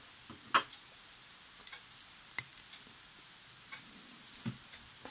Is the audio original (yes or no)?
yes